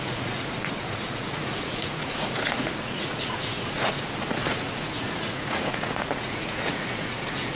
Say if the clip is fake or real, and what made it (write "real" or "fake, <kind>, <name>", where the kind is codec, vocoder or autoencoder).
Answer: fake, vocoder, Vocos